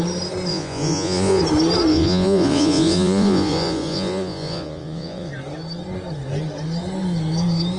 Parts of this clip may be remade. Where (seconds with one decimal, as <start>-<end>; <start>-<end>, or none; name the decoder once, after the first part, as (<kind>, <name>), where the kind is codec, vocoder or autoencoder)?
0.5-1.4 (vocoder, Vocos); 1.9-5.3